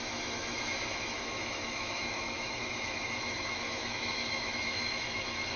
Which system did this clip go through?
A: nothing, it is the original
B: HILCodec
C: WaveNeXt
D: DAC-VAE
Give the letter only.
D